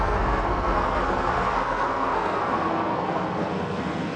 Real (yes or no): no